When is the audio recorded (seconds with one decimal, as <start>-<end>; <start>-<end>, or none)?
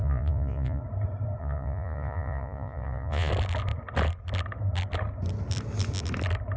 0.8-1.4; 3.3-6.6